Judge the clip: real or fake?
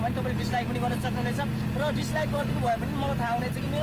real